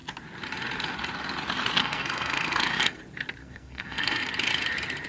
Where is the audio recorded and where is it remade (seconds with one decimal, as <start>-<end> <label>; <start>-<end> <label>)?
0.0-1.8 recorded; 1.8-3.0 remade; 3.0-3.4 recorded; 3.4-4.3 remade; 4.3-5.1 recorded